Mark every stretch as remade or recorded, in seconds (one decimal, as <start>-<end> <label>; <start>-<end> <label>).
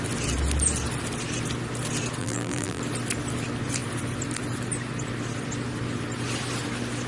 0.0-2.2 recorded; 2.2-2.8 remade; 2.8-7.1 recorded